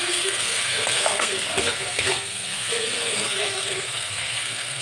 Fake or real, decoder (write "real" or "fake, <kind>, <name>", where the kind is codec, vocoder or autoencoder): fake, codec, SNAC